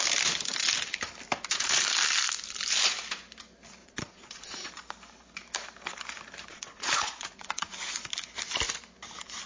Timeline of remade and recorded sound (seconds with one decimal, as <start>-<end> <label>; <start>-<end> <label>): 0.0-3.8 recorded; 3.8-4.7 remade; 4.7-6.5 recorded; 6.5-7.7 remade; 7.7-9.5 recorded